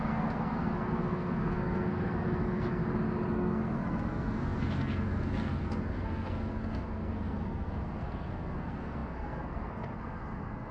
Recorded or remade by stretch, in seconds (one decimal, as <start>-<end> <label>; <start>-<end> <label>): 0.0-2.8 remade; 2.8-3.3 recorded; 3.3-10.7 remade